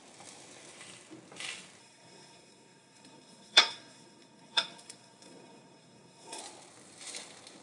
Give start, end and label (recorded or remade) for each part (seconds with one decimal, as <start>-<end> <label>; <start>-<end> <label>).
0.0-1.8 recorded; 1.8-6.4 remade; 6.4-7.6 recorded